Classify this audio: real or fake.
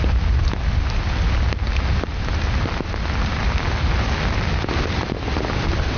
real